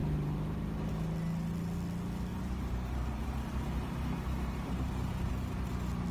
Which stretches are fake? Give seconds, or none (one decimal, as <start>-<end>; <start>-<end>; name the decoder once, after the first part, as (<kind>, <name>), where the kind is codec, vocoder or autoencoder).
0.0-0.9 (vocoder, BigVGAN v2); 2.3-5.3